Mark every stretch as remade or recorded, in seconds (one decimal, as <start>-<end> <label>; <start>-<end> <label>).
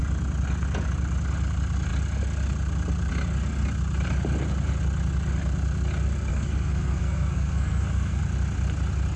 0.0-6.3 recorded; 6.3-8.2 remade; 8.2-9.2 recorded